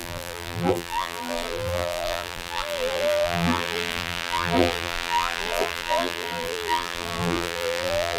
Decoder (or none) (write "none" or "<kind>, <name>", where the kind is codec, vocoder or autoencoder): vocoder, BigVGAN v2